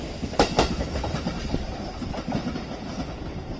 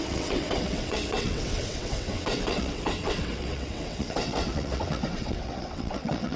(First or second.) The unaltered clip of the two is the first